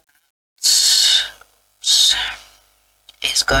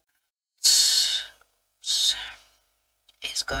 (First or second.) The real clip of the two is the first